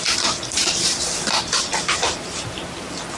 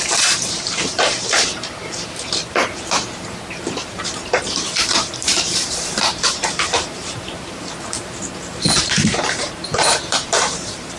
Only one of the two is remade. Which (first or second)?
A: second